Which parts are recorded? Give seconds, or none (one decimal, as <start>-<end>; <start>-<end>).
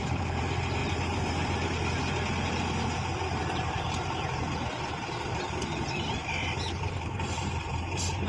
0.8-5.3; 6.2-6.8